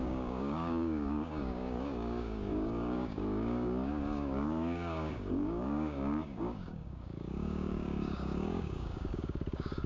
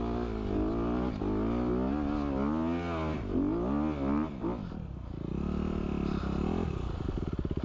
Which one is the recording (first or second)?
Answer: second